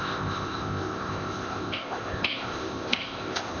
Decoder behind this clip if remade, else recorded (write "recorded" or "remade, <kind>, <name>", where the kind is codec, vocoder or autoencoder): remade, codec, ZipCodec